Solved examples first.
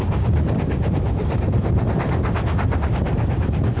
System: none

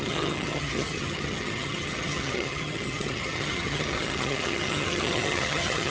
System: vocoder, HiFi-GAN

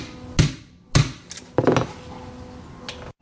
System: none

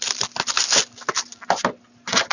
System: none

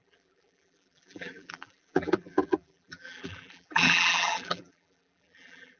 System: vocoder, BigVGAN v2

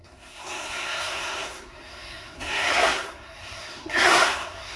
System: codec, SNAC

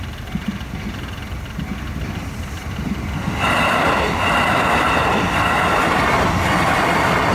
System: none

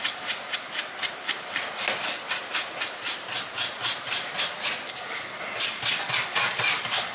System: none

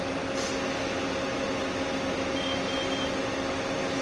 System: none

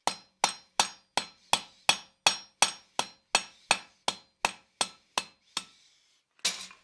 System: none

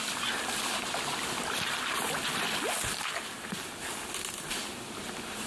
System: none